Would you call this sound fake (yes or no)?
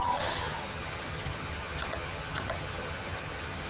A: yes